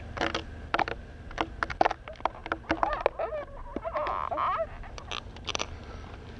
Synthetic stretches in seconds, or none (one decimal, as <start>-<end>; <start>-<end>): none